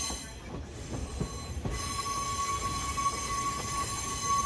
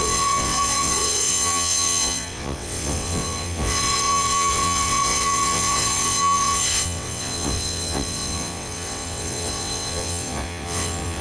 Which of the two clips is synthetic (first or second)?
second